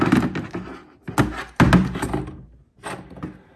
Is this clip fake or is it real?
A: real